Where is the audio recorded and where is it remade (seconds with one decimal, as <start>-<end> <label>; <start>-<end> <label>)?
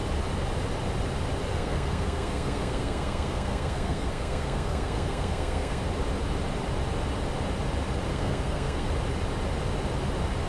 0.0-1.5 recorded; 1.5-5.8 remade; 5.8-8.1 recorded; 8.1-8.9 remade; 8.9-10.5 recorded